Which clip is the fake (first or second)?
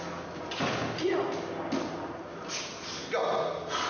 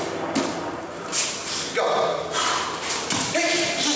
second